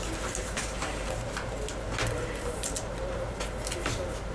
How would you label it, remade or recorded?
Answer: recorded